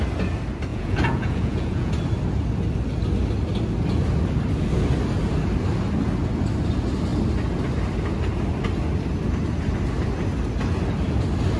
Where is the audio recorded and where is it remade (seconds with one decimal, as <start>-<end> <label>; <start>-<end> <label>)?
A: 0.0-0.7 recorded; 0.7-1.9 remade; 1.9-11.6 recorded